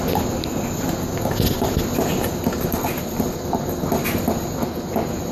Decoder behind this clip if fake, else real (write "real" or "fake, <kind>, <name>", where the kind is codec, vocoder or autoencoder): real